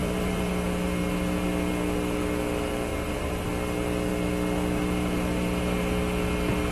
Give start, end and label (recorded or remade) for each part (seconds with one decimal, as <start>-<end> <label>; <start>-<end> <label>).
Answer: 0.0-0.5 remade; 0.5-2.9 recorded; 2.9-3.5 remade; 3.5-6.7 recorded